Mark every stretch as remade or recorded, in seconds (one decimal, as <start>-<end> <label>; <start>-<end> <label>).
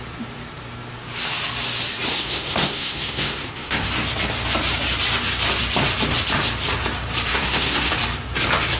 0.0-2.1 recorded; 2.1-3.9 remade; 3.9-7.3 recorded; 7.3-7.9 remade; 7.9-8.8 recorded